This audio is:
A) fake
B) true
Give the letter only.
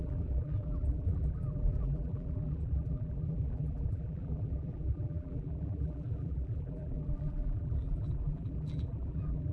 A